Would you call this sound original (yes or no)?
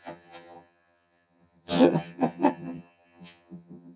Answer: no